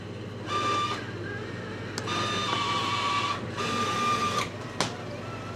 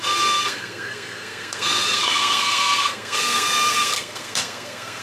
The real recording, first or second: first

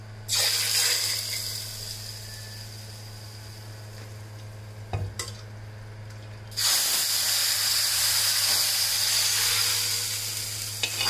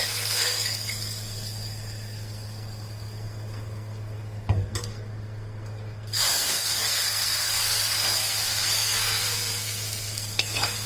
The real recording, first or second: first